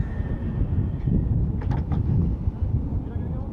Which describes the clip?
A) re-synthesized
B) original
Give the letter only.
B